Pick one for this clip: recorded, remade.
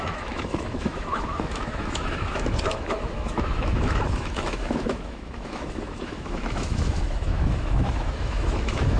remade